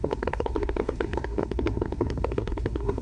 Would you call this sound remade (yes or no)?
yes